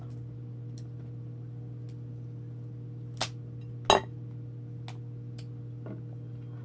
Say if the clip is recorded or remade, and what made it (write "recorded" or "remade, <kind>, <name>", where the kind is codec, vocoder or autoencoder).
recorded